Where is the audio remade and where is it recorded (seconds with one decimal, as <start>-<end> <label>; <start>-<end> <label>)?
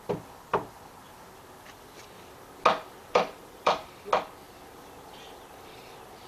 0.0-3.0 recorded; 3.0-3.9 remade; 3.9-6.3 recorded